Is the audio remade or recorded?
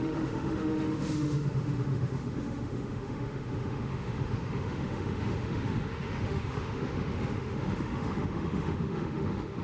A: remade